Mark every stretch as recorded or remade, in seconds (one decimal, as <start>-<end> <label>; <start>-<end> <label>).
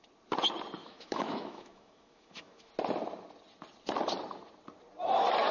0.0-0.8 recorded; 0.8-2.7 remade; 2.7-5.5 recorded